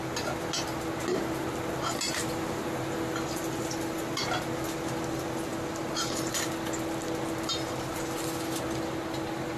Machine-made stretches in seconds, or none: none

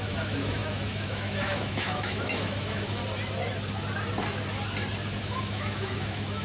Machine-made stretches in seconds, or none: 0.0-3.0 (autoencoder, DAC-VAE); 5.2-6.4

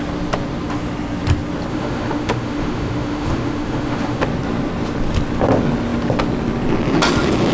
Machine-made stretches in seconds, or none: 1.7-4.2 (autoencoder, DAC-VAE)

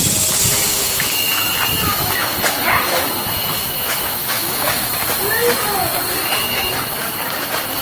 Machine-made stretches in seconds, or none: 0.7-1.5 (autoencoder, DAC-VAE); 1.9-4.9; 6.2-6.9

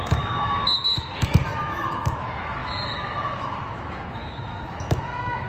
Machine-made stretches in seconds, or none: 0.0-5.5 (autoencoder, DAC-VAE)

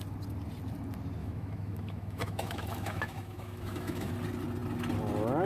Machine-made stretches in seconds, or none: 1.2-4.1 (autoencoder, DAC-VAE)

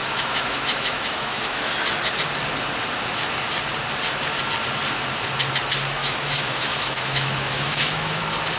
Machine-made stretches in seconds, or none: 0.0-1.7 (autoencoder, DAC-VAE); 6.0-8.2

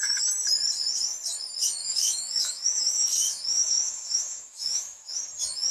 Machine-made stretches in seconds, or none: 1.8-5.2 (autoencoder, DAC-VAE)